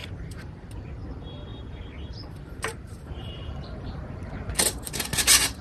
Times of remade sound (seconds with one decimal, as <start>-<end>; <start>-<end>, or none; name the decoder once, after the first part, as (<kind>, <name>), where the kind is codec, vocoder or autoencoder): 0.0-0.8 (vocoder, BigVGAN v2); 1.5-4.9